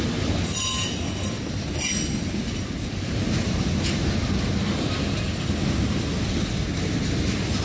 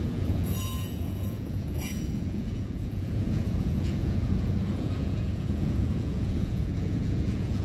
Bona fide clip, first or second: first